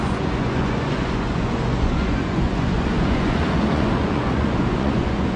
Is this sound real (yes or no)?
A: no